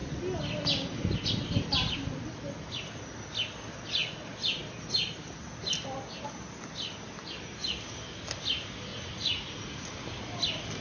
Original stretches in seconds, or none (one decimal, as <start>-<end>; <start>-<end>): 0.0-8.9; 9.9-10.8